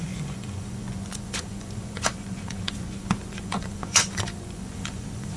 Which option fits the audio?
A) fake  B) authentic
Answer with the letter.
A